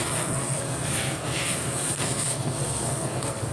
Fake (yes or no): yes